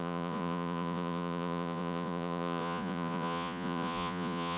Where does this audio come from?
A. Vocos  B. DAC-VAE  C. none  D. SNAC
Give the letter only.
A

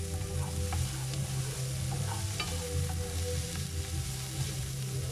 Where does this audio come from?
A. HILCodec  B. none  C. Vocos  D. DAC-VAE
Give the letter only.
B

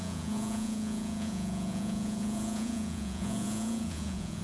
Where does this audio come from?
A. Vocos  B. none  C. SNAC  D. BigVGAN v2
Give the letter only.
A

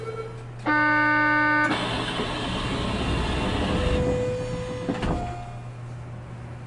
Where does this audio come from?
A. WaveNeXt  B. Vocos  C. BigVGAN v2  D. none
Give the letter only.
D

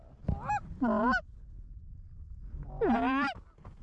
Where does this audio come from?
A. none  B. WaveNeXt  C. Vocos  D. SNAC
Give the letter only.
A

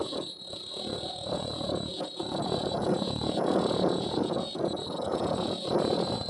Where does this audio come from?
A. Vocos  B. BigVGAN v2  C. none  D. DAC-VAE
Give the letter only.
A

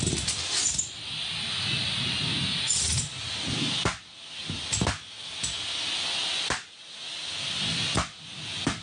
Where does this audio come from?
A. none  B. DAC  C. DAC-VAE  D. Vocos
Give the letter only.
A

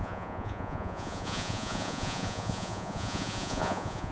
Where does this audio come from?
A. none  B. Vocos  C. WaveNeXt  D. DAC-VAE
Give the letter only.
B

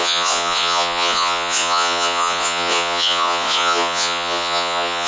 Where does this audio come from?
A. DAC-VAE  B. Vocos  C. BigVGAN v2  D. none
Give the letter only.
B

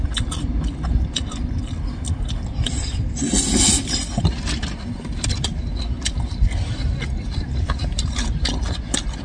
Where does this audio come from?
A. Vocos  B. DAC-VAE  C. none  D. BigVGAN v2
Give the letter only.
C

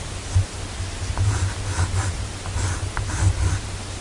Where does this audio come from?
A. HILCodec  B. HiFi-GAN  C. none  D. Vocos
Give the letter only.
C